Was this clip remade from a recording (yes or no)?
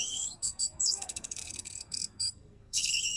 yes